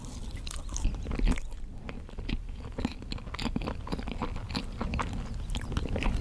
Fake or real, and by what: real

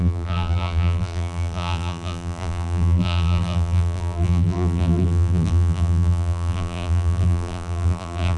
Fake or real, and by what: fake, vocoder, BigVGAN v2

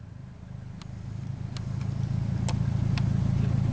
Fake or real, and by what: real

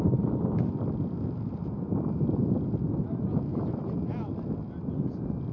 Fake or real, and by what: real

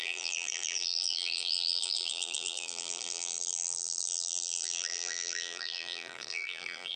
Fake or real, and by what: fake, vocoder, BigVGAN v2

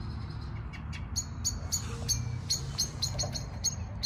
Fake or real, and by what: real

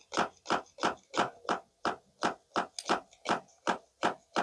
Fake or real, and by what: real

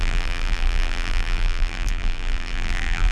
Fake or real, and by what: fake, vocoder, BigVGAN v2